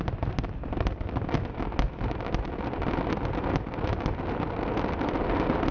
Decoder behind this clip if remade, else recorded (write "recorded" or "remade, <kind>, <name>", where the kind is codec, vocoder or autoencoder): recorded